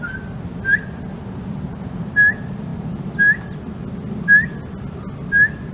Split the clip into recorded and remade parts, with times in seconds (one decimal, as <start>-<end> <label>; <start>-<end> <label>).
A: 0.0-5.7 recorded